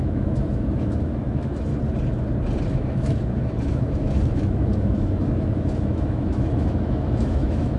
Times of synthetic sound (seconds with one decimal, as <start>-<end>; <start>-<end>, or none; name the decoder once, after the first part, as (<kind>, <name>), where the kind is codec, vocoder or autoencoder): 0.0-1.7 (autoencoder, DAC-VAE); 2.7-7.8

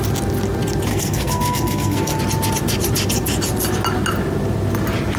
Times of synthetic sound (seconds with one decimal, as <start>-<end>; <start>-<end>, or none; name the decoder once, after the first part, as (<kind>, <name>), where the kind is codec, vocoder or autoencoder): 0.9-2.2 (codec, SNAC)

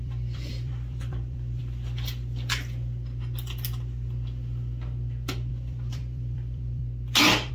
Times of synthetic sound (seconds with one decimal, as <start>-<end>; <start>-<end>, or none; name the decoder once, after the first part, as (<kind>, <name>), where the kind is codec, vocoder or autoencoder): 0.0-1.6 (vocoder, BigVGAN v2); 5.5-6.8